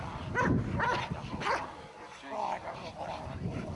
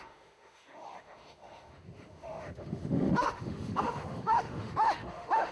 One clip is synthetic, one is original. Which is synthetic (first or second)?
second